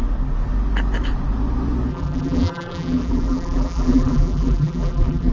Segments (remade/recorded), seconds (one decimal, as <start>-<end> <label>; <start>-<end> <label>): 0.0-1.9 recorded; 1.9-5.3 remade